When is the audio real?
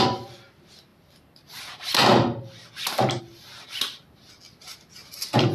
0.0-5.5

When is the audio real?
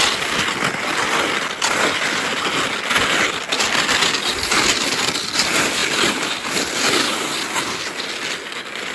0.0-8.9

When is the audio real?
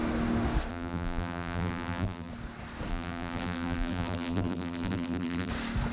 0.0-0.7; 2.3-2.9; 5.5-5.9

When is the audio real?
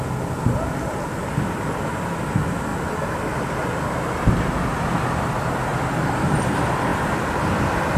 0.0-5.7; 6.3-8.0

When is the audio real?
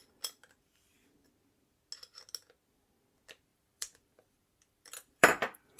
0.0-3.5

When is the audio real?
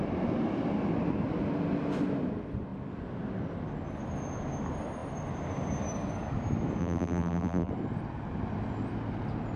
0.0-6.8; 7.7-9.6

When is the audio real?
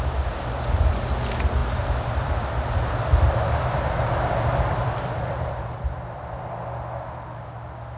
0.0-1.6; 6.4-8.0